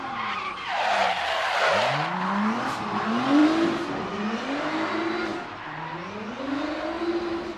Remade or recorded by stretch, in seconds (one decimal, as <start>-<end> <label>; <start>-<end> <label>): 0.0-7.6 recorded